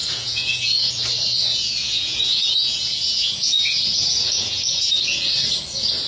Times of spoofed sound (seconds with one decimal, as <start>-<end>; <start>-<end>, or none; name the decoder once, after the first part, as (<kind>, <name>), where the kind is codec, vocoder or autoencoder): 0.0-0.9 (vocoder, Vocos); 1.5-5.2